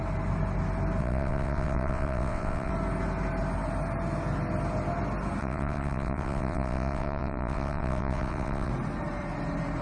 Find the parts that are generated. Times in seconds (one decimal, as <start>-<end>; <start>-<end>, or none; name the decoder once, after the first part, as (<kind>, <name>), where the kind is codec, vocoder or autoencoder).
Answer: 1.0-2.7 (vocoder, WaveNeXt); 5.4-8.7